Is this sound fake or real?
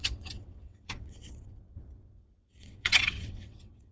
fake